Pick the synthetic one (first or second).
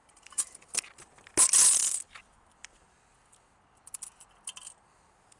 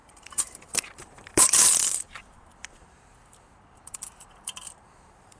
second